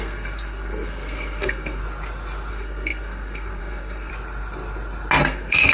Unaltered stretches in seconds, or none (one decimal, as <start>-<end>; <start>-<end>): 1.8-2.5; 4.1-5.2